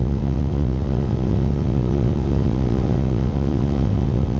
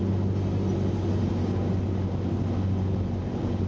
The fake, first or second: first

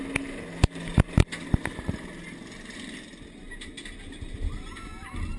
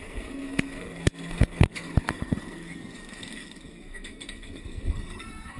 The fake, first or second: second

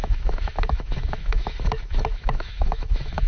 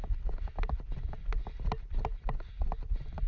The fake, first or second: first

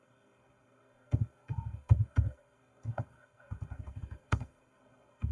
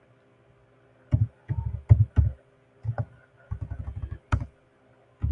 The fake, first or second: first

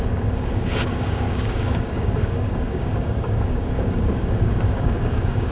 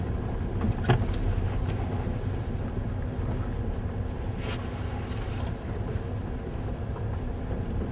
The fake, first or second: first